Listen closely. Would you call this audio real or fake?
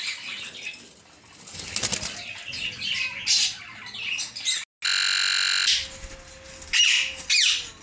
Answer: real